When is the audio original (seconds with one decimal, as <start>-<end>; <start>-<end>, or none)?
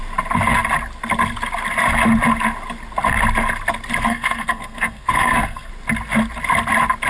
0.0-4.1; 5.7-7.1